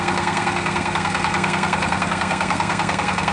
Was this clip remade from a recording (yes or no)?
yes